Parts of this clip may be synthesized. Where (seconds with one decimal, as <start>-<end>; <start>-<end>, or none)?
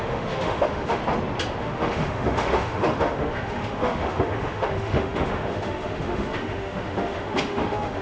0.0-1.0; 1.6-8.0